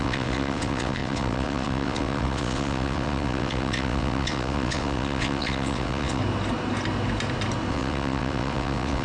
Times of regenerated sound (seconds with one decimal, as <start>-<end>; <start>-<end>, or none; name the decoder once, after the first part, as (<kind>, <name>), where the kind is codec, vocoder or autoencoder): 0.0-6.2 (vocoder, WaveNeXt); 7.7-9.0